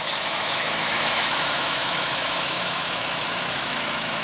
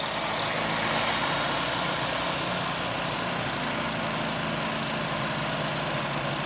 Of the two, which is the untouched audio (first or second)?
second